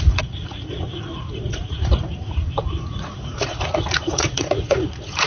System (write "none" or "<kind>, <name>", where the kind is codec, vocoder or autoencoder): vocoder, Vocos